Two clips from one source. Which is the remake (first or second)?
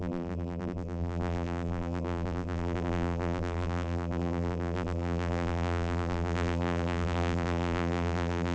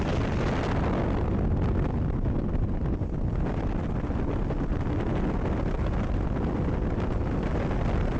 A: first